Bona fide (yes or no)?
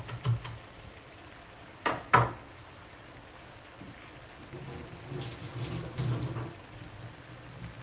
yes